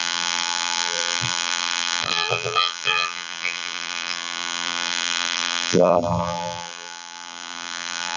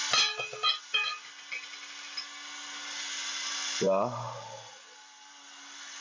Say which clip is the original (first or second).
second